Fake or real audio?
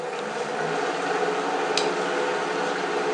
real